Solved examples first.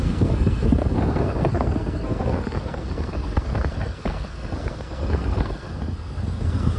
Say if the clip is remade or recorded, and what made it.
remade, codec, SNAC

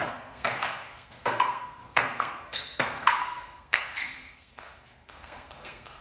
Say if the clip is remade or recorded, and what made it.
remade, codec, SNAC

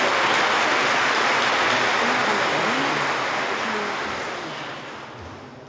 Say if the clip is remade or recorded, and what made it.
recorded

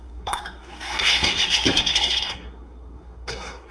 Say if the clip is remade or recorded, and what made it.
remade, codec, SNAC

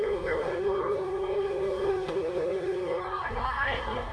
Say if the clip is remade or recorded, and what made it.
remade, codec, SNAC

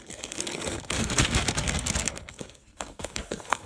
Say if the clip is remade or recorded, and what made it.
remade, codec, SNAC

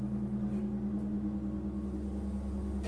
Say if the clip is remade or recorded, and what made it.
recorded